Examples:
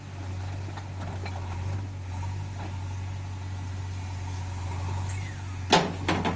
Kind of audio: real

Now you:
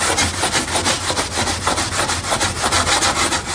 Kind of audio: real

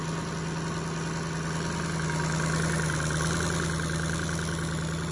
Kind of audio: real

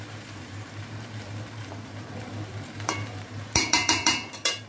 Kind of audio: fake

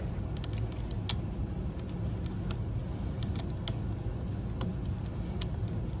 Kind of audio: real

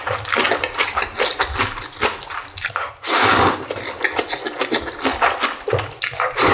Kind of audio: real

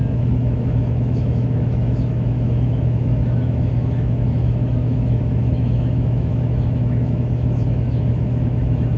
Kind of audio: fake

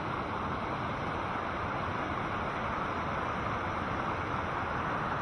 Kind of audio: real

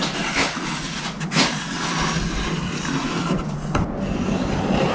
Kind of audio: real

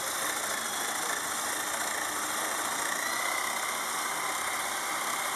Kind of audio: real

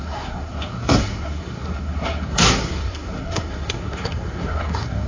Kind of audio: fake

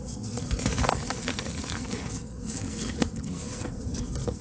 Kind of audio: fake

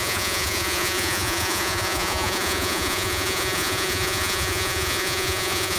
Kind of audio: fake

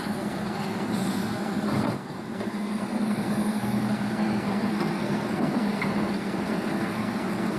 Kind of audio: fake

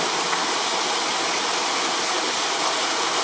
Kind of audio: real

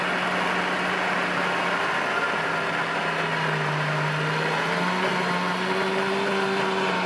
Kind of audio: real